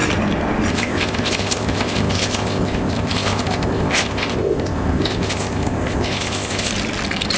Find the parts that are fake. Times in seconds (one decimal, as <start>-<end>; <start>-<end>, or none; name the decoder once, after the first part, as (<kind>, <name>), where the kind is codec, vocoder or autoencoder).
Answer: 0.7-6.7 (codec, ZipCodec)